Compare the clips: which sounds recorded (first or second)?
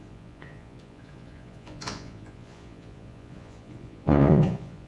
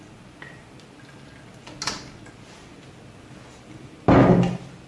second